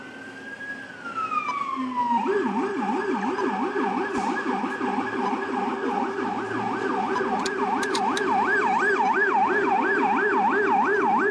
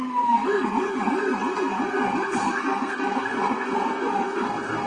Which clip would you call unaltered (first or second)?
first